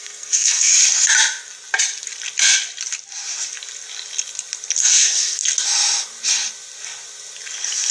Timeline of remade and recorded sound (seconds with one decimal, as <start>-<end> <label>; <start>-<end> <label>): 0.0-0.7 remade; 0.7-4.8 recorded; 4.8-5.4 remade; 5.4-7.9 recorded